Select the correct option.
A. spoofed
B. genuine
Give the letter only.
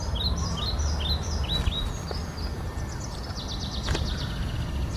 B